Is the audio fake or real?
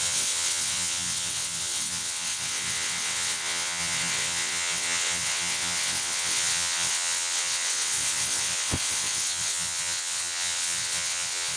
fake